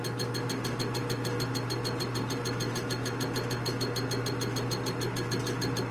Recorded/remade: recorded